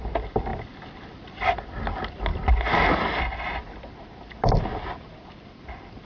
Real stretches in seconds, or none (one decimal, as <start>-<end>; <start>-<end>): 0.0-6.0